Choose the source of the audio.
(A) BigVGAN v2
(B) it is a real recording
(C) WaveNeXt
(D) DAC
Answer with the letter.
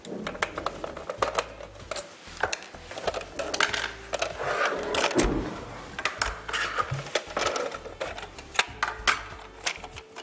B